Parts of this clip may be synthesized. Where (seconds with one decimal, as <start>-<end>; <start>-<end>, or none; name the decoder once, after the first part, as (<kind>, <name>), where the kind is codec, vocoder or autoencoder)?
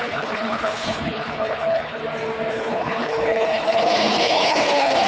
0.0-2.0 (codec, HILCodec); 2.5-5.1